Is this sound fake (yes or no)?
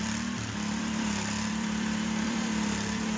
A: yes